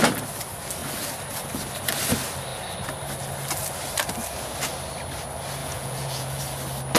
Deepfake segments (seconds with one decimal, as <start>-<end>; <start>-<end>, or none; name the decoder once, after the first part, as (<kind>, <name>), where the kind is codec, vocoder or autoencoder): 5.6-6.4 (vocoder, Vocos)